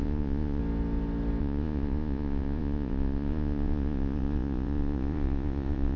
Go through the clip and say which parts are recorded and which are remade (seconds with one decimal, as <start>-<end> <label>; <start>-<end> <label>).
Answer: 0.0-0.6 remade; 0.6-1.4 recorded; 1.4-6.0 remade